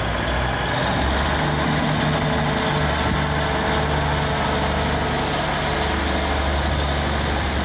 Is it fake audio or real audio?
real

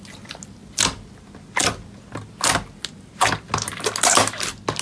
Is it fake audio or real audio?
real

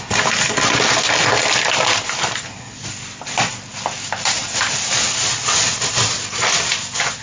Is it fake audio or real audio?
real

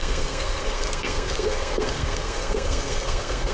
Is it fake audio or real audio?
fake